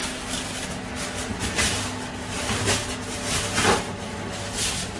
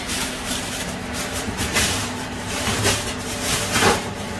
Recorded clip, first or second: first